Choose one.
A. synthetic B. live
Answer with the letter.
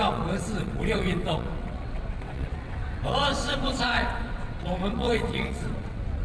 A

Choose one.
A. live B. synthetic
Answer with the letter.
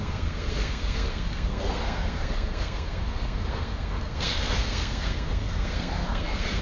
B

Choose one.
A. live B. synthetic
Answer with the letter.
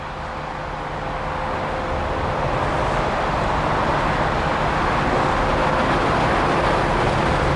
A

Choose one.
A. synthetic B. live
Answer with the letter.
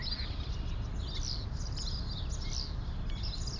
B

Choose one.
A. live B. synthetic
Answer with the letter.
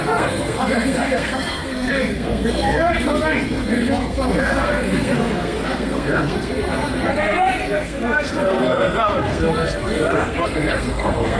B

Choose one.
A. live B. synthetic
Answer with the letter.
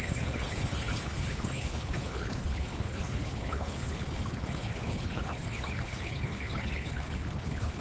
B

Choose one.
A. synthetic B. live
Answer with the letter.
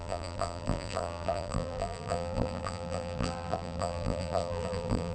A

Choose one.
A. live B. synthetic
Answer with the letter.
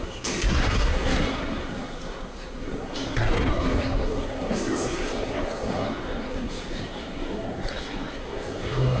B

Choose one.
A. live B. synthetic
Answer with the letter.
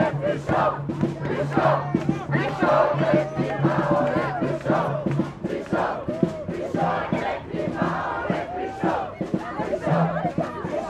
A